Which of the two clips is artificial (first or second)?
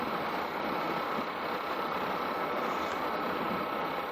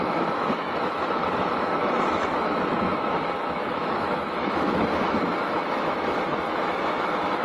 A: second